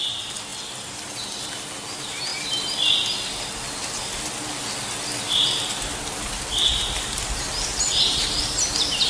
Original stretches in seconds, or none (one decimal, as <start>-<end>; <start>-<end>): 0.0-6.7; 8.4-9.1